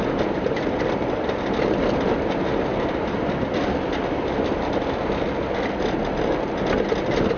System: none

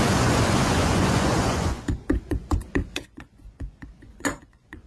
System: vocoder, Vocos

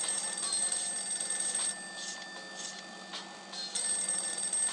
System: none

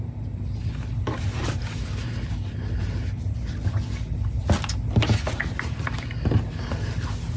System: none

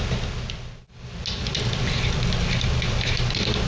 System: none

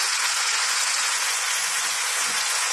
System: vocoder, Vocos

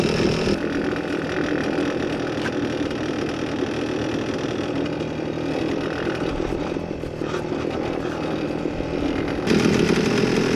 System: none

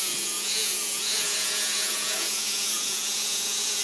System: vocoder, Vocos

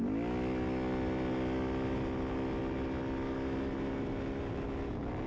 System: none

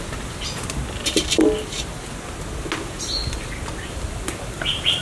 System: none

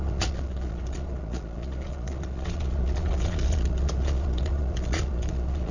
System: vocoder, Vocos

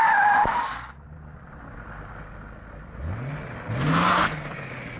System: none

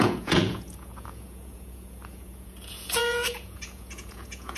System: vocoder, Vocos